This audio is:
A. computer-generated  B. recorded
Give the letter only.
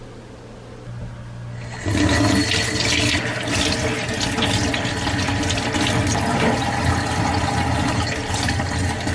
B